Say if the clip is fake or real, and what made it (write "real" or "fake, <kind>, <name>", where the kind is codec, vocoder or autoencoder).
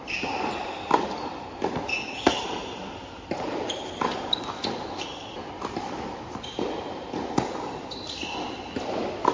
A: fake, vocoder, BigVGAN v2